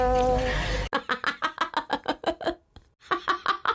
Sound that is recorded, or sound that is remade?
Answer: recorded